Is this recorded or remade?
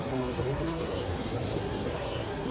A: remade